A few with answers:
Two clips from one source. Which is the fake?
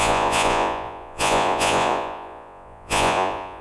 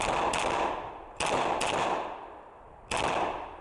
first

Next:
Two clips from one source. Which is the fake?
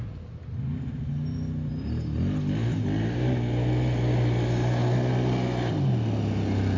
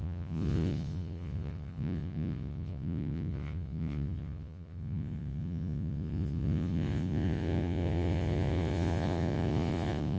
second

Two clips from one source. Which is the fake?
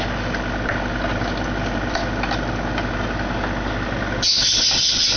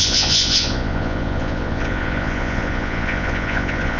second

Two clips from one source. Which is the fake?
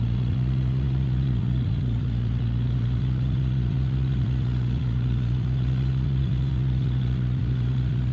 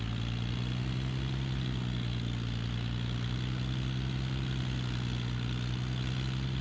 first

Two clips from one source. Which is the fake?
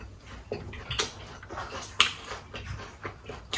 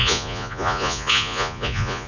second